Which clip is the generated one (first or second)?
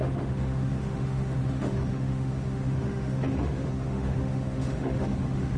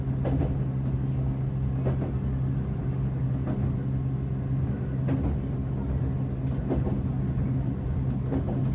first